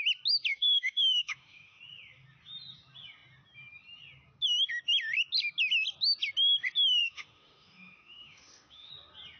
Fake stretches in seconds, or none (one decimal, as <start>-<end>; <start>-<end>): 0.5-1.8; 7.0-8.9